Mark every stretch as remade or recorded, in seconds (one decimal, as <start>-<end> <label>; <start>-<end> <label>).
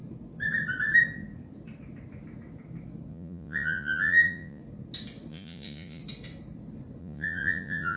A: 0.0-3.1 recorded; 3.1-4.6 remade; 4.6-5.3 recorded; 5.3-6.0 remade; 6.0-7.0 recorded; 7.0-8.0 remade